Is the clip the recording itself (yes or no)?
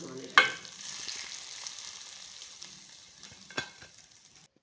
yes